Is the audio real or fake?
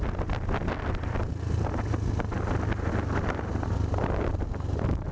real